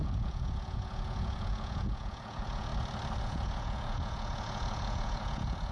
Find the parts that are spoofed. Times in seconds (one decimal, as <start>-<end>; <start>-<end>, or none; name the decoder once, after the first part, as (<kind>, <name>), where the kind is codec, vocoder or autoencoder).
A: 0.0-2.7 (vocoder, Vocos); 3.2-5.7